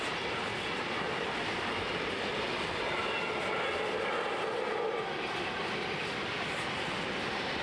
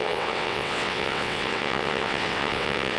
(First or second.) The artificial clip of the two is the second